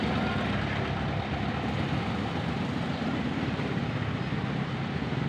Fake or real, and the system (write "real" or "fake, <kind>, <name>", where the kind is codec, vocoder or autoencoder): real